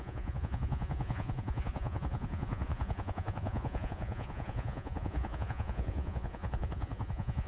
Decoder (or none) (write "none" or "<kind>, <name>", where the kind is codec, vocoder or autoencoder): vocoder, Vocos